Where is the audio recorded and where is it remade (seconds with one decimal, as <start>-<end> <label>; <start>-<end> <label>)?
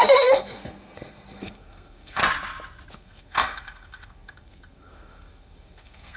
0.0-2.2 remade; 2.2-2.9 recorded; 2.9-6.2 remade